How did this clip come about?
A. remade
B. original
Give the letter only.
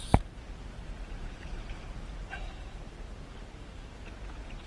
B